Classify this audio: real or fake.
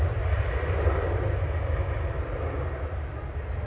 real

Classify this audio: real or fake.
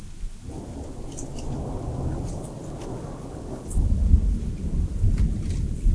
real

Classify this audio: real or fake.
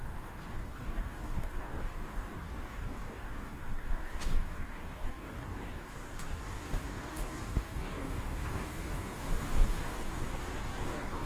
fake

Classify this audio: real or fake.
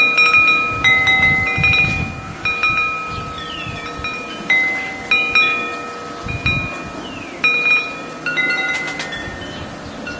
real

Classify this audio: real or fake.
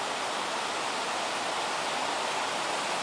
real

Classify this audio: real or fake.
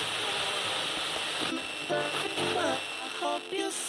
real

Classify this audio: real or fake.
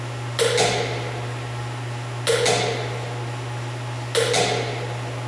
real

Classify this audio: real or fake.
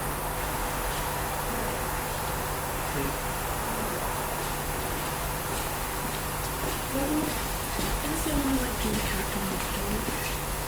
real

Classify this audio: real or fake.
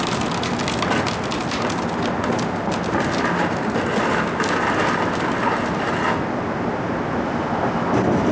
real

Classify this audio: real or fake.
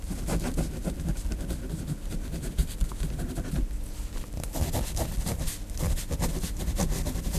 real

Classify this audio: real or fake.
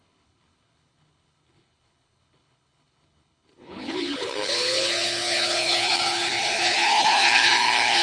fake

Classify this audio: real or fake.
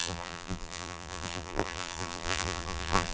fake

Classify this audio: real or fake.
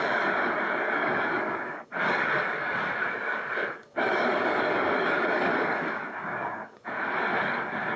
fake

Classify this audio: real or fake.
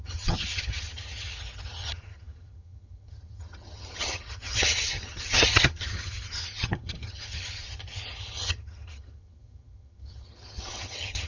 fake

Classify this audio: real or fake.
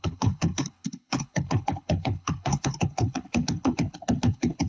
fake